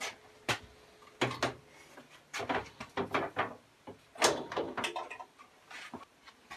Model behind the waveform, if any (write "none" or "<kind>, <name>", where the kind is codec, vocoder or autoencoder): none